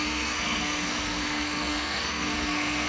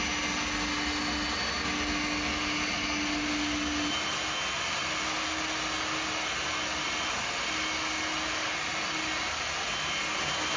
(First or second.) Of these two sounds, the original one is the second